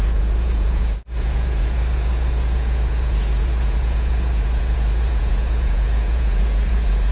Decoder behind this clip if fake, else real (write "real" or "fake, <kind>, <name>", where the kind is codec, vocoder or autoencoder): fake, vocoder, Vocos